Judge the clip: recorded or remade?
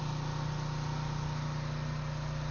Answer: recorded